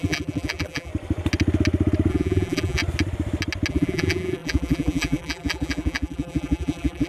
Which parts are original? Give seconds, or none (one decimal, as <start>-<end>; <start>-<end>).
0.9-2.1; 2.8-3.7